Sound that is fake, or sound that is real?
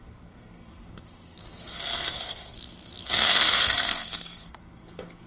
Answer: fake